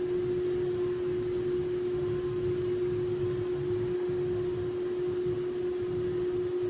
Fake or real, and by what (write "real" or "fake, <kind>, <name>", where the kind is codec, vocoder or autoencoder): real